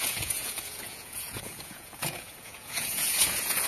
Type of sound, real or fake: fake